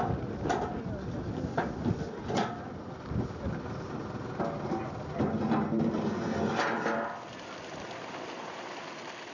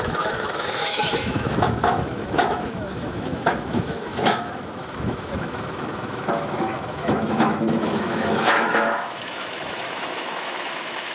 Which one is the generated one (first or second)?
second